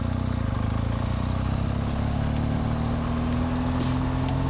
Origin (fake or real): real